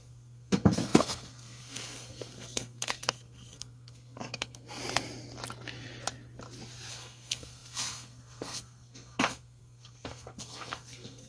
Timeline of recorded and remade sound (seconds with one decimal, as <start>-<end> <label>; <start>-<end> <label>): 0.0-4.8 remade; 4.8-6.9 recorded; 6.9-11.3 remade